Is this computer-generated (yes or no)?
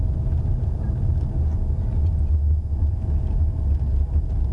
no